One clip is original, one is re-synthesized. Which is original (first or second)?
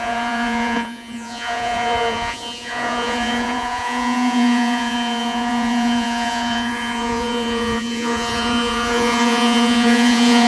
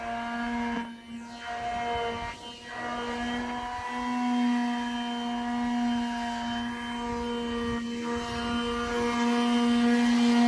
second